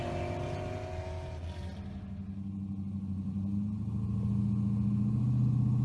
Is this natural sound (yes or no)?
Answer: yes